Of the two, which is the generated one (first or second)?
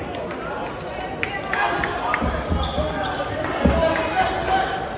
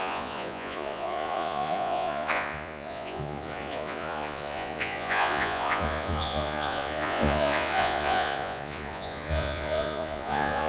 second